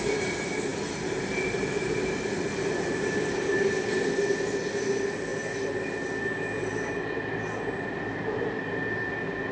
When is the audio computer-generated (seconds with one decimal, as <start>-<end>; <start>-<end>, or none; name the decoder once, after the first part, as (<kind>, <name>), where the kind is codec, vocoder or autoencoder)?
0.7-2.4 (vocoder, BigVGAN v2)